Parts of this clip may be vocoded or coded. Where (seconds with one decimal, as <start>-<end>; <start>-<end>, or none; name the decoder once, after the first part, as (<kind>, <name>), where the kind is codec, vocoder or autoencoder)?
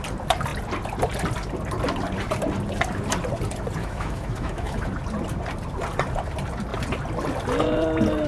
3.8-4.8 (autoencoder, DAC-VAE)